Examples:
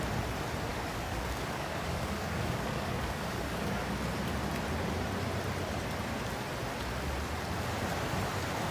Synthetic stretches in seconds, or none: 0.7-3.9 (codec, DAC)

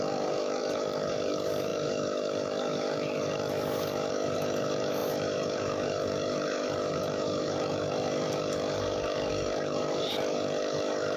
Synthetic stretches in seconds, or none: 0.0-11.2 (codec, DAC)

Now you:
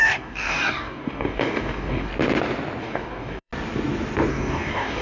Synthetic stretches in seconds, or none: 0.0-2.1 (codec, DAC); 2.8-3.5; 4.3-5.0

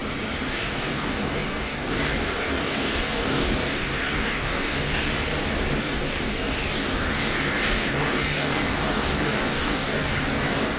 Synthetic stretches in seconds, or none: 0.5-5.1 (codec, DAC); 5.8-10.8